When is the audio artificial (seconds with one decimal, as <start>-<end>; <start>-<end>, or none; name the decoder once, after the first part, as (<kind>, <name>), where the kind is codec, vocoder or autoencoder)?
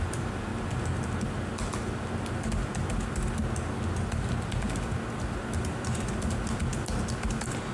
0.0-0.5 (vocoder, BigVGAN v2); 5.1-6.7